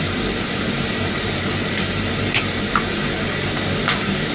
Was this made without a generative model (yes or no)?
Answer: no